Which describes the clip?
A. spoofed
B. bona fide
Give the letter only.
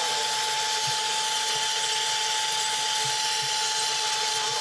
B